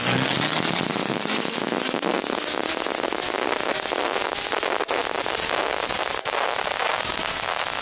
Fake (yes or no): no